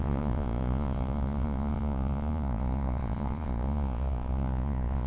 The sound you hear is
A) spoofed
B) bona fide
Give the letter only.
A